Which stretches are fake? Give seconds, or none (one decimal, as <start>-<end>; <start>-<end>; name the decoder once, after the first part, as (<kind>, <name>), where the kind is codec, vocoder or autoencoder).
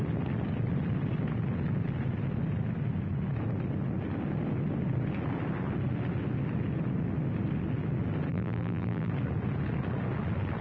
8.3-9.1 (vocoder, BigVGAN v2)